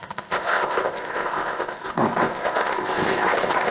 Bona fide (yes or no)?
no